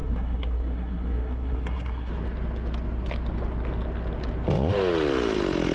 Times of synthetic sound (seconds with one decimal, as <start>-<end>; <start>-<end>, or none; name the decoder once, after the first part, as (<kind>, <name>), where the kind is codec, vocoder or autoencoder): 0.0-2.1 (codec, SNAC)